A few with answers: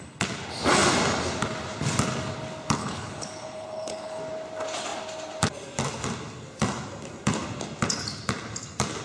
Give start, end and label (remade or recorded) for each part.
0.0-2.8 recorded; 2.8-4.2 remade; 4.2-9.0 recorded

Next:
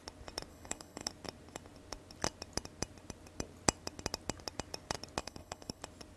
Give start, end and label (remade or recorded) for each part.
0.0-0.5 recorded; 0.5-1.1 remade; 1.1-5.2 recorded; 5.2-5.8 remade; 5.8-6.2 recorded

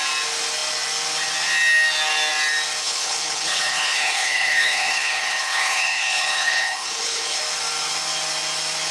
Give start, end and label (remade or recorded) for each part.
0.0-2.8 recorded; 2.8-7.4 remade; 7.4-8.9 recorded